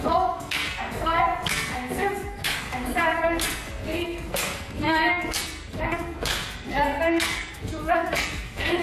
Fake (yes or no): yes